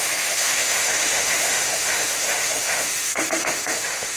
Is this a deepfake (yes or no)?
yes